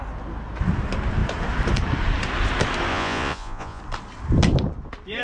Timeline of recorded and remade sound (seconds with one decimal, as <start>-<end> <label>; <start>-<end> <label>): 0.0-2.9 recorded; 2.9-3.8 remade; 3.8-5.2 recorded